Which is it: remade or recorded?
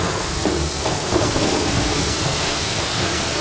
remade